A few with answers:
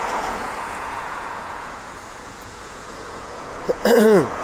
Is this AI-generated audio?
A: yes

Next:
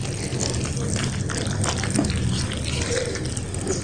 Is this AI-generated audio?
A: no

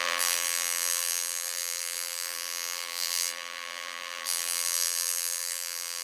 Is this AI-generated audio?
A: yes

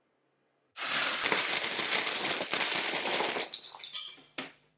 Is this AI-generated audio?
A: yes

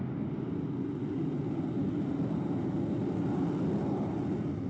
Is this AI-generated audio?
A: no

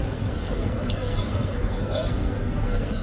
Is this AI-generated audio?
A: yes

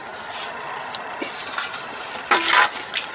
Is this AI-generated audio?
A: no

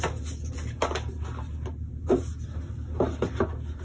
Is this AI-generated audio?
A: no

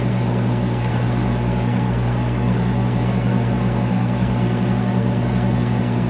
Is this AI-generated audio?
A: yes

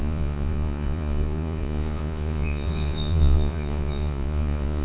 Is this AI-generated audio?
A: yes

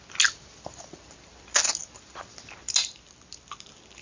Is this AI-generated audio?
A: no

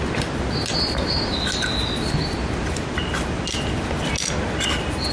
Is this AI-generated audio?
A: no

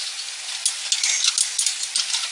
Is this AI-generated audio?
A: no